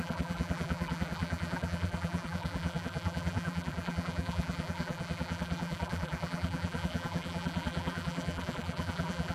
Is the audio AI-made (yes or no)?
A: yes